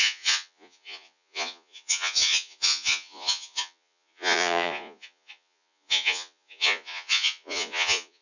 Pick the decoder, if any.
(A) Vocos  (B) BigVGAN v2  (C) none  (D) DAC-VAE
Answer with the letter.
A